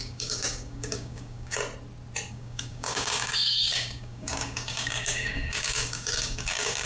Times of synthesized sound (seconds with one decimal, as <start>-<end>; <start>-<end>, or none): 0.0-1.6; 2.3-6.9